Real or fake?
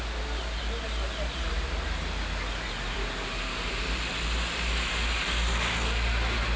real